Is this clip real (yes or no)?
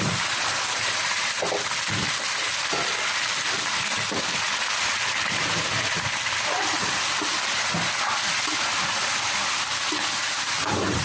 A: yes